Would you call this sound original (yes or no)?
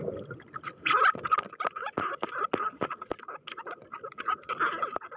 yes